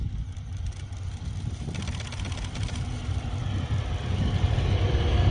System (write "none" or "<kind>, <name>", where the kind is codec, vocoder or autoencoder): vocoder, BigVGAN v2